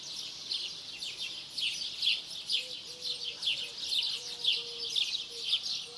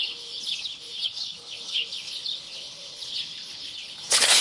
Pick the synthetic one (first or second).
second